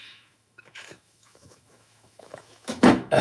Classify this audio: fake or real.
fake